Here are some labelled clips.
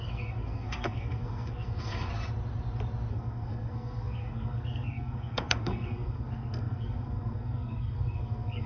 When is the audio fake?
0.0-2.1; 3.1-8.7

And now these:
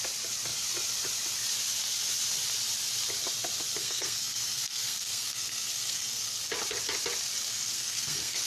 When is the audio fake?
3.8-6.4; 7.5-8.5

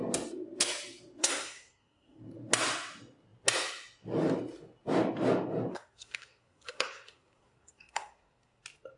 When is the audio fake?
1.2-2.2; 5.7-8.6

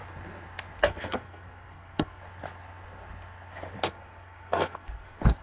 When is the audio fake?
0.8-2.2; 3.9-5.4

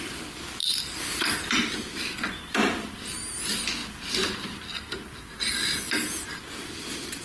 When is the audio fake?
none

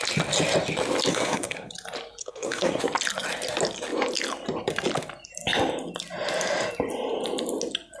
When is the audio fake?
1.1-1.7; 2.2-2.8

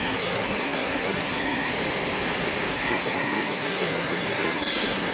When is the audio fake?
0.0-1.7; 2.7-5.1